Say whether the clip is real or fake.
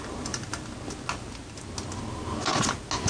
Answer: real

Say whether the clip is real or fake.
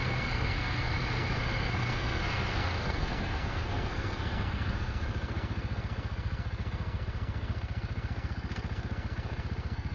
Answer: fake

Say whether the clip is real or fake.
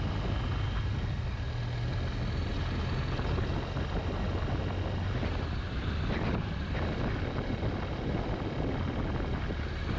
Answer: real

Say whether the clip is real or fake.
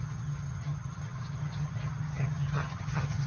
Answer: fake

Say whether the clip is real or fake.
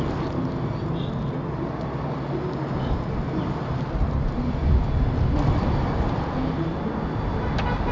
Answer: real